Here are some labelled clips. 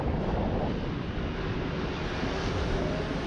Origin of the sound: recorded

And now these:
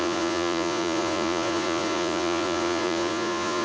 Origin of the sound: remade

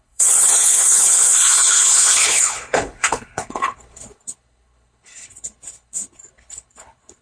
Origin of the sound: remade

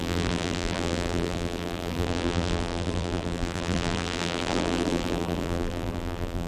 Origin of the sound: remade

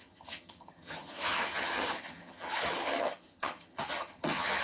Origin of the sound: remade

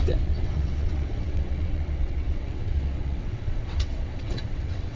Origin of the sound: remade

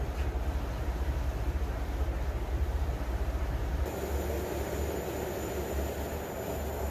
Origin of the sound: recorded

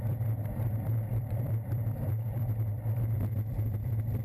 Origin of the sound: remade